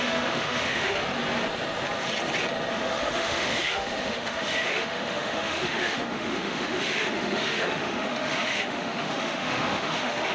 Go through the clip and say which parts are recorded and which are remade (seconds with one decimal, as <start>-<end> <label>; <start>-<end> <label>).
0.0-1.0 remade; 1.0-2.7 recorded; 2.7-10.3 remade